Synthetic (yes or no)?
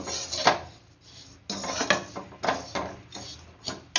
no